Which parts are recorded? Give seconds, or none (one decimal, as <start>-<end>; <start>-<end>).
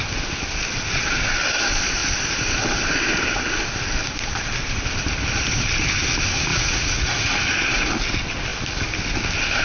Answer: 0.0-6.5; 7.3-9.6